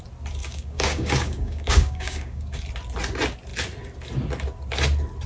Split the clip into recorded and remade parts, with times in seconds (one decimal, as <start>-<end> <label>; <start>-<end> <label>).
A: 0.0-0.4 recorded; 0.4-2.6 remade; 2.6-5.3 recorded